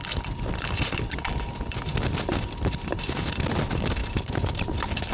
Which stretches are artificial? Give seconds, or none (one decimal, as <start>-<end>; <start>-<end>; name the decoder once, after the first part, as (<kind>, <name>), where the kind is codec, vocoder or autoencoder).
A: 4.0-4.6 (vocoder, BigVGAN v2)